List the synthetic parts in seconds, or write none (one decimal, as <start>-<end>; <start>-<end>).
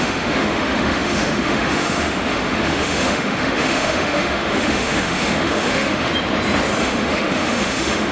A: 0.0-6.1; 6.8-8.1